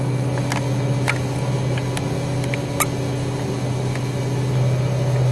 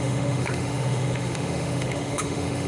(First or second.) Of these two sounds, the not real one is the second